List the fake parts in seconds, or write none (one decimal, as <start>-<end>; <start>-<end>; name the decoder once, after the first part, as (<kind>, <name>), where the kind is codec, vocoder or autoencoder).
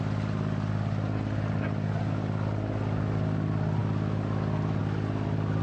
none